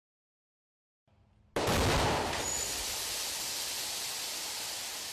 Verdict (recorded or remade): recorded